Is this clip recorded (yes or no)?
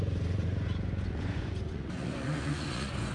no